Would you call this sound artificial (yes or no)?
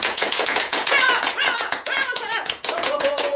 yes